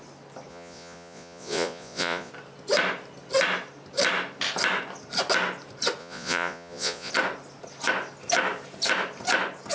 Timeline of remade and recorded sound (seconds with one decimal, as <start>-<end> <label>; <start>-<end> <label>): 0.0-0.5 recorded; 0.5-2.3 remade; 2.3-6.0 recorded; 6.0-7.1 remade; 7.1-9.7 recorded